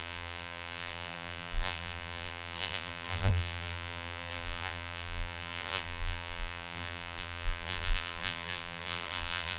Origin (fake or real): fake